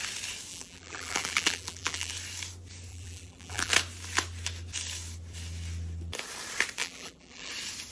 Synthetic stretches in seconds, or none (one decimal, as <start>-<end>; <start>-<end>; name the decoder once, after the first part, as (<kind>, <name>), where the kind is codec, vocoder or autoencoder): 0.5-2.1 (vocoder, BigVGAN v2); 2.9-3.7; 6.8-7.5